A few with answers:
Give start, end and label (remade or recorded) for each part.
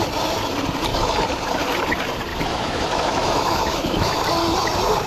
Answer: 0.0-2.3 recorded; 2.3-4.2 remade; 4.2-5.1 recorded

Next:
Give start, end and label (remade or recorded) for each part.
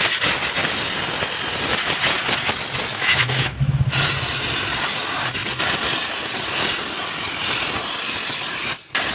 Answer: 0.0-2.9 recorded; 2.9-3.9 remade; 3.9-9.1 recorded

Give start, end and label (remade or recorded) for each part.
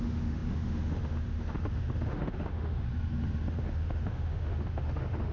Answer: 0.0-2.9 remade; 2.9-3.5 recorded; 3.5-5.3 remade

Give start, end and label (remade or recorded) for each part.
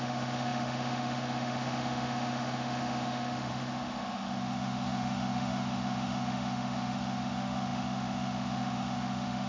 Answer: 0.0-9.5 remade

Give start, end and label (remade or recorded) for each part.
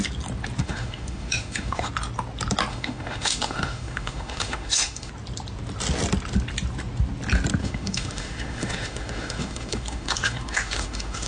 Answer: 0.0-0.6 recorded; 0.6-1.9 remade; 1.9-2.7 recorded; 2.7-5.1 remade; 5.1-7.6 recorded; 7.6-11.3 remade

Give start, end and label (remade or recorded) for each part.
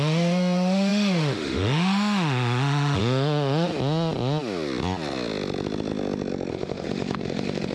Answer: 0.0-3.7 remade; 3.7-6.5 recorded; 6.5-7.7 remade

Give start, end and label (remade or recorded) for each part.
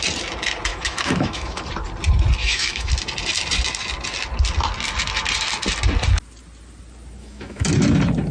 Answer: 0.0-0.7 recorded; 0.7-1.6 remade; 1.6-2.4 recorded; 2.4-2.9 remade; 2.9-7.2 recorded; 7.2-7.7 remade; 7.7-8.3 recorded